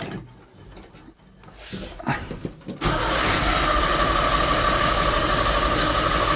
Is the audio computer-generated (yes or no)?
no